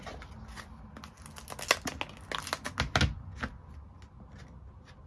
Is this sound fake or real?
real